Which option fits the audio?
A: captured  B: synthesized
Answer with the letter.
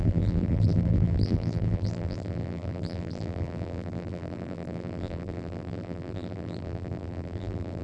B